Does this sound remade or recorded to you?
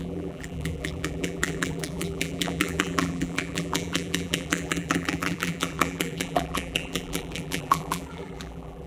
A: remade